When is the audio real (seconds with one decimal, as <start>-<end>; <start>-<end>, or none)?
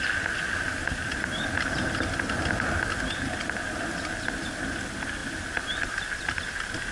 0.0-6.9